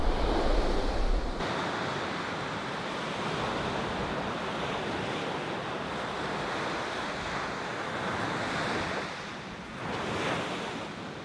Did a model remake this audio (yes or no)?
no